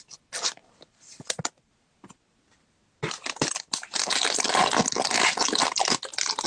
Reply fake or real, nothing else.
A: real